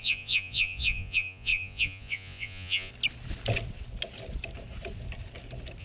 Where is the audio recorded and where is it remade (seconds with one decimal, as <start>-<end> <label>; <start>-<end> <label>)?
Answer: 0.0-2.9 remade; 2.9-5.8 recorded